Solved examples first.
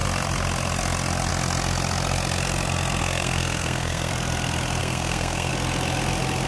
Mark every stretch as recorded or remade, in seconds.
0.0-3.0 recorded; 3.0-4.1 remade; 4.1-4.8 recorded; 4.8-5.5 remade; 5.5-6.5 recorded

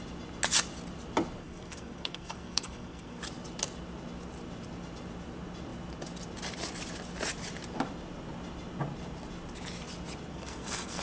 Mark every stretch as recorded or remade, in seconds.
0.0-1.4 recorded; 1.4-3.2 remade; 3.2-10.3 recorded; 10.3-11.0 remade